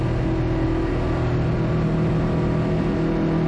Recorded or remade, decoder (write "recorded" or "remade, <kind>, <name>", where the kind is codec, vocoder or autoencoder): recorded